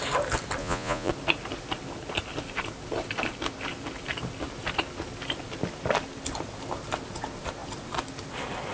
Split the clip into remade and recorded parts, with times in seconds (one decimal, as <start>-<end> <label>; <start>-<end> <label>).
0.0-0.6 recorded; 0.6-1.1 remade; 1.1-8.7 recorded